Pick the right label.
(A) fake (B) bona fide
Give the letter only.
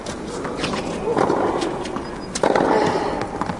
B